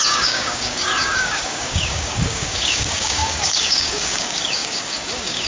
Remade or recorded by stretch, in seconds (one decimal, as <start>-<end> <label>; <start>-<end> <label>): 0.0-5.5 remade